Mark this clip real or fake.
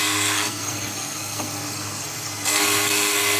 fake